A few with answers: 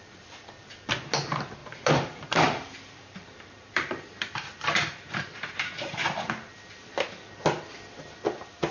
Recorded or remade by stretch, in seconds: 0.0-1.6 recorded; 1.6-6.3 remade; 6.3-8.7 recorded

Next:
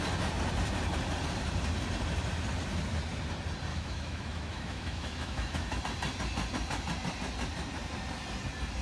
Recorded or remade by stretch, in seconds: 0.0-3.7 recorded; 3.7-5.8 remade; 5.8-8.8 recorded

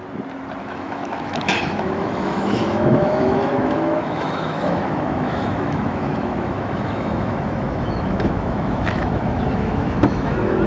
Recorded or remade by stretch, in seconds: 0.0-0.6 recorded; 0.6-10.7 remade

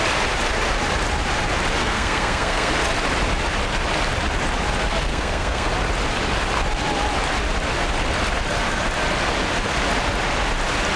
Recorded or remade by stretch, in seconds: 0.0-1.8 recorded; 1.8-2.7 remade; 2.7-5.1 recorded; 5.1-5.7 remade; 5.7-11.0 recorded

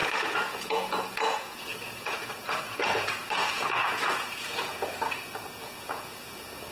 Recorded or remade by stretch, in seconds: 0.0-6.7 remade